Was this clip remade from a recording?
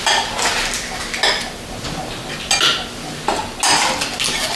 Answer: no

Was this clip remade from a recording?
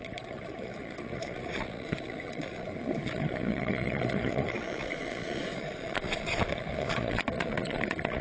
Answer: yes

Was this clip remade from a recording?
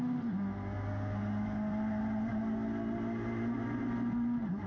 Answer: no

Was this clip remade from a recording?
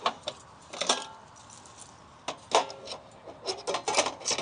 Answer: no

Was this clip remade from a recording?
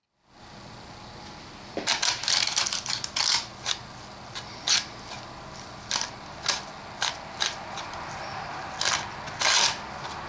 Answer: no